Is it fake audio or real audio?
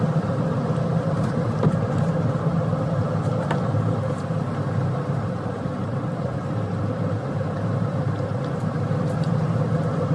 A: fake